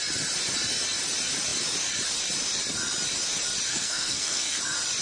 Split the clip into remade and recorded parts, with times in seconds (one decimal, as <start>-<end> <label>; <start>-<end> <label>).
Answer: 0.0-3.7 recorded; 3.7-4.6 remade; 4.6-5.0 recorded